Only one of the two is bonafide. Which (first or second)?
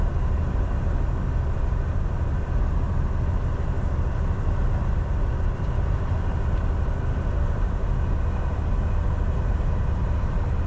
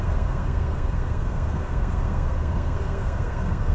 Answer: first